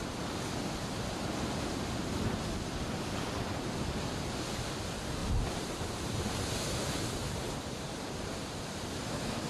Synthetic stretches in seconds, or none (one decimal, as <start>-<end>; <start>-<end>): 5.2-6.4; 7.2-9.1